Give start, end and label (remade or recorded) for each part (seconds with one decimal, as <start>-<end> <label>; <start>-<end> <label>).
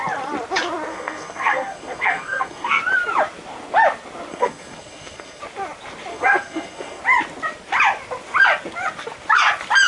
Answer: 0.0-0.9 recorded; 0.9-2.8 remade; 2.8-4.3 recorded; 4.3-5.4 remade; 5.4-6.1 recorded; 6.1-7.0 remade; 7.0-9.9 recorded